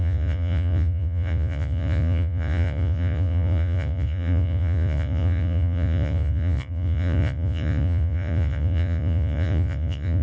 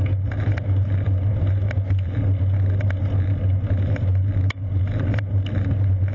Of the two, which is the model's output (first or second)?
first